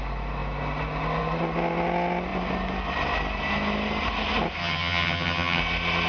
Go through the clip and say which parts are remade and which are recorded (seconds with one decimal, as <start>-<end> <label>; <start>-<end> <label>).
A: 0.0-4.6 recorded; 4.6-5.6 remade; 5.6-6.1 recorded